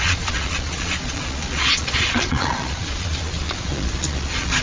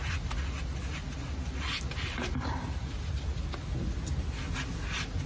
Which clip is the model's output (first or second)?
first